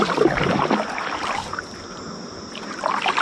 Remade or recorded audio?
recorded